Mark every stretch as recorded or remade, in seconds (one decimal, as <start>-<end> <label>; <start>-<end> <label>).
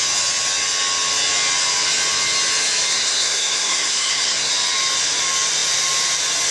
0.0-2.9 recorded; 2.9-4.5 remade; 4.5-6.5 recorded